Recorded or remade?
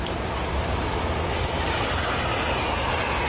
recorded